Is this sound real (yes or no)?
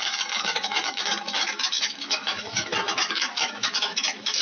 no